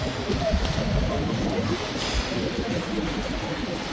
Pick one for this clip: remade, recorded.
recorded